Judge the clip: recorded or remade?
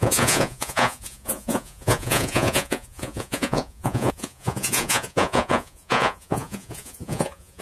remade